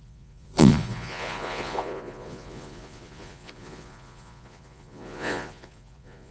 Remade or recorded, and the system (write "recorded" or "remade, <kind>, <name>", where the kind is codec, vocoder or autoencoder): remade, vocoder, Vocos